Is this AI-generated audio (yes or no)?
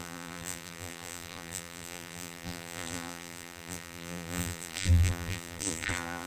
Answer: yes